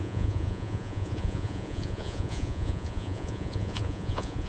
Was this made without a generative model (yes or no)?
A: no